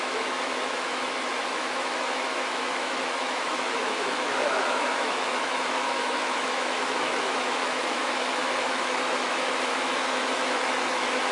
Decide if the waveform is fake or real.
fake